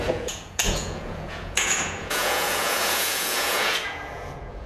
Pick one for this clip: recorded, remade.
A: remade